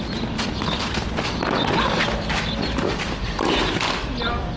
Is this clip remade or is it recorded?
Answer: recorded